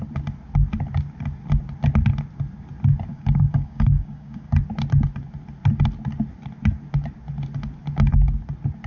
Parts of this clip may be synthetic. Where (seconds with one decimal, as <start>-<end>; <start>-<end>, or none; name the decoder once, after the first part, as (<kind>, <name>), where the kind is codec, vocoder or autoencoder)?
3.1-4.5 (codec, DAC)